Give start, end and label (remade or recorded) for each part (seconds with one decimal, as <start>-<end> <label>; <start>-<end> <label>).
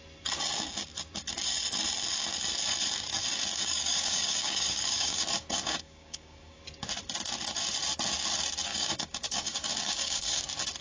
0.0-3.5 recorded; 3.5-6.6 remade; 6.6-8.7 recorded; 8.7-10.4 remade; 10.4-10.8 recorded